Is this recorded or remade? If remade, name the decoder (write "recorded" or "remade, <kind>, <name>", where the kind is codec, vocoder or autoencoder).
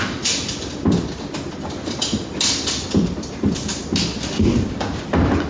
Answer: recorded